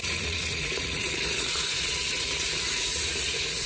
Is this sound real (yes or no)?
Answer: no